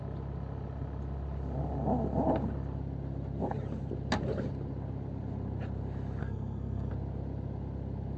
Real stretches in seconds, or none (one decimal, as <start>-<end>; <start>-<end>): 0.0-6.2; 6.9-8.2